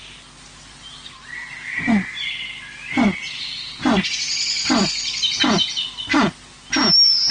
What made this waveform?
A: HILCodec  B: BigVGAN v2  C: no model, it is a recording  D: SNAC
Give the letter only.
C